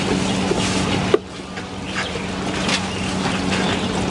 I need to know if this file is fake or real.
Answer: real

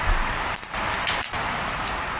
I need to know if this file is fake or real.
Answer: fake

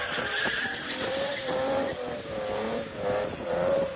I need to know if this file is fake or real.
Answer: fake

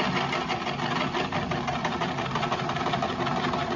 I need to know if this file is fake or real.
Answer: fake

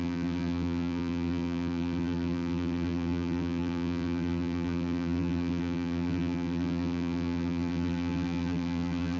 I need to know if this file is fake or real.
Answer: fake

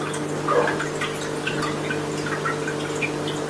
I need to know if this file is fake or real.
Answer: real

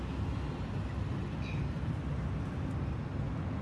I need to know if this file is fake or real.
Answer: real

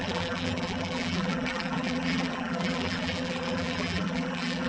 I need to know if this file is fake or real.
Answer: fake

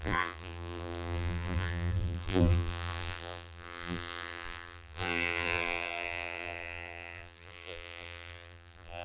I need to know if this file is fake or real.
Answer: fake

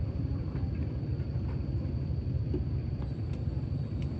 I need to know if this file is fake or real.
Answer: fake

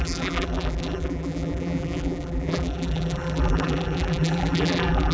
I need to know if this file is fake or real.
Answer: fake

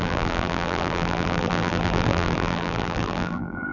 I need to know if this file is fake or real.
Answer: fake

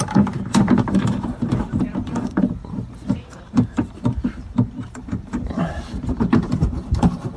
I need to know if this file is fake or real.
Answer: fake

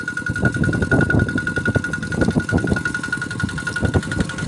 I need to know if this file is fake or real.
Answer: real